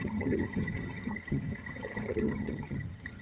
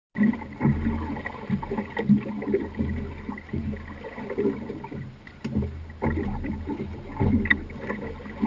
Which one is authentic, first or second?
second